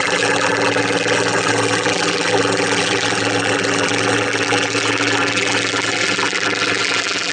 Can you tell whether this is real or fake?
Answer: fake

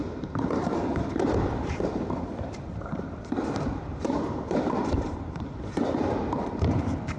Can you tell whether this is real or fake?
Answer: fake